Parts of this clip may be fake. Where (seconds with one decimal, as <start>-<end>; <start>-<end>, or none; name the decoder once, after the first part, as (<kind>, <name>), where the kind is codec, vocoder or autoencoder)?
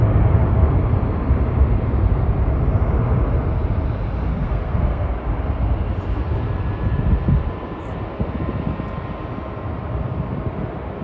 4.3-5.1 (codec, SNAC)